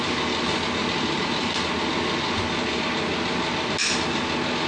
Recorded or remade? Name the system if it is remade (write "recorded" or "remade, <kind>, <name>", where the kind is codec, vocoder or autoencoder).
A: recorded